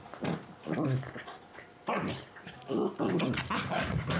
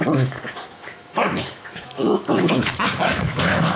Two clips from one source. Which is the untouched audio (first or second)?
first